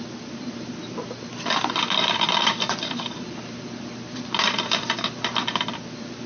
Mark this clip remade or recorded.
remade